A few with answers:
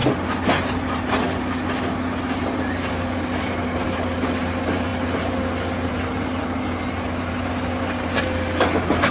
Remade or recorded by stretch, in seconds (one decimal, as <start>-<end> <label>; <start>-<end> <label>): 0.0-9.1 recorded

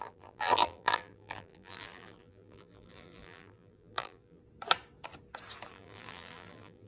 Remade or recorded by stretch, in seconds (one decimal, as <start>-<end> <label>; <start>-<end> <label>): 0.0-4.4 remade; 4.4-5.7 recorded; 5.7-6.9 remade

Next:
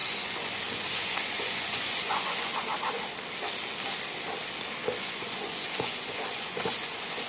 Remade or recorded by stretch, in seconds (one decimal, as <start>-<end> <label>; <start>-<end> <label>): 0.0-2.5 remade; 2.5-5.0 recorded; 5.0-7.3 remade

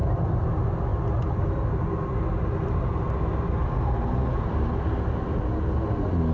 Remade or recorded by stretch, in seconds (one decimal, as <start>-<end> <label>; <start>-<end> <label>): 0.0-6.3 recorded

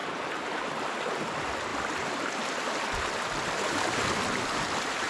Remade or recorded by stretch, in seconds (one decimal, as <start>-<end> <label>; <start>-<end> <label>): 0.0-0.6 remade; 0.6-1.7 recorded; 1.7-5.1 remade